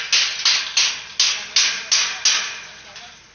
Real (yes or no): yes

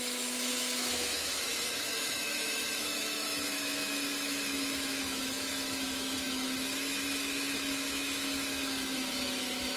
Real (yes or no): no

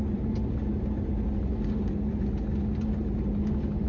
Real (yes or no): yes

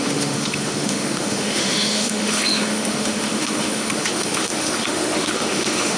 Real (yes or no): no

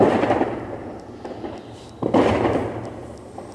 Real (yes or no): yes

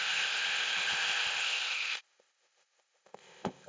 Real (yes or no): no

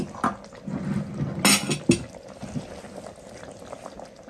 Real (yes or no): yes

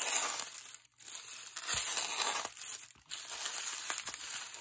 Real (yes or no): yes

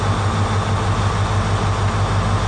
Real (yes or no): yes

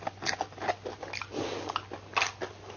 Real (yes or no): yes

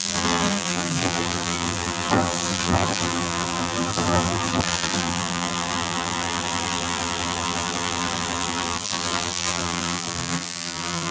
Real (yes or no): no